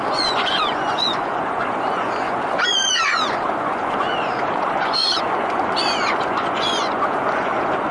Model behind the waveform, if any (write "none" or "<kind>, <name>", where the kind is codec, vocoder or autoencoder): vocoder, Vocos